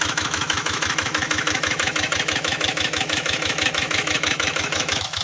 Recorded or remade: remade